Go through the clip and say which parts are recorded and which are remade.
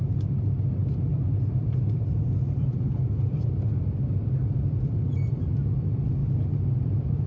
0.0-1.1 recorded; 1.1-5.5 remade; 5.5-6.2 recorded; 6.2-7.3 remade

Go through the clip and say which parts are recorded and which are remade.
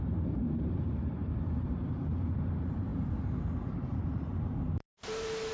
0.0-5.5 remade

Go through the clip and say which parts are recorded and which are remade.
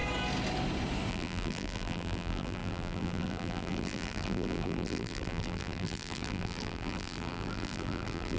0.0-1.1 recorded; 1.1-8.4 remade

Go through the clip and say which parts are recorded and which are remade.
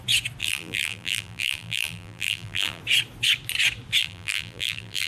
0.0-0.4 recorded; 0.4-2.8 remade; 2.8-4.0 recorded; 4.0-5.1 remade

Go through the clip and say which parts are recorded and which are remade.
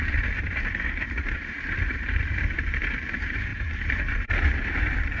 0.0-5.2 remade